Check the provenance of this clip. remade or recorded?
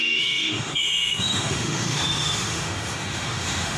remade